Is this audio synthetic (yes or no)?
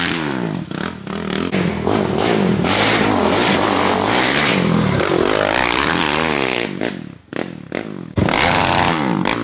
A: no